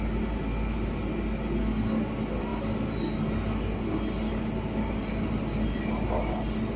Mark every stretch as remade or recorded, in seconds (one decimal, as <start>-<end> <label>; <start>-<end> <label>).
0.0-6.8 recorded